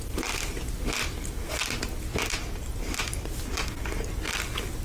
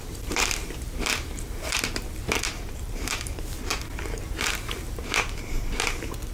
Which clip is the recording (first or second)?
first